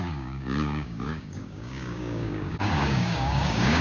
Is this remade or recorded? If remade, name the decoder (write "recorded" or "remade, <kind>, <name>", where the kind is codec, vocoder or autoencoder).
remade, codec, DAC